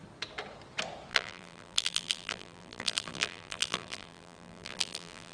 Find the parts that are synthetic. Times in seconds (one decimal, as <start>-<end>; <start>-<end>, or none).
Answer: 1.1-5.3